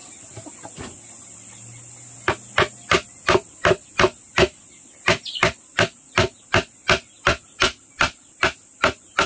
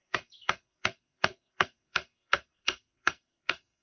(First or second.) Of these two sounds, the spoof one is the second